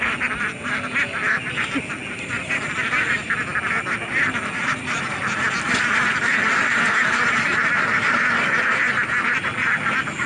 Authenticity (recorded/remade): recorded